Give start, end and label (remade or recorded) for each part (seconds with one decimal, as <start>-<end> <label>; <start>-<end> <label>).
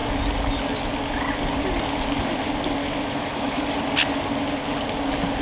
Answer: 0.0-2.8 recorded; 2.8-3.6 remade; 3.6-5.4 recorded